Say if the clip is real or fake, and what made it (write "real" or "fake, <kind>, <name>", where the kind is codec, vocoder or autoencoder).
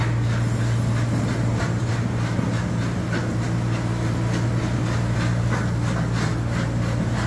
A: real